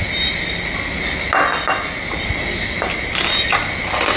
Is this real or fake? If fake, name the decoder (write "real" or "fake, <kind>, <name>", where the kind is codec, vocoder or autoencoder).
real